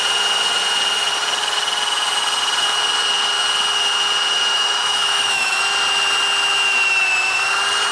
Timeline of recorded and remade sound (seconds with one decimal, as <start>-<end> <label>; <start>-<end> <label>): 0.0-4.5 recorded; 4.5-5.6 remade; 5.6-7.9 recorded